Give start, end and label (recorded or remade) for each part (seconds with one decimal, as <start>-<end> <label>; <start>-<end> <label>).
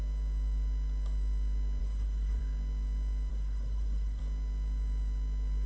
0.0-1.8 recorded; 1.8-2.4 remade; 2.4-3.3 recorded; 3.3-4.2 remade; 4.2-5.7 recorded